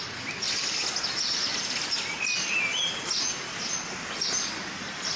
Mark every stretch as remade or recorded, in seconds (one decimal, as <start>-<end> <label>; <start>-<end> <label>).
0.0-5.2 recorded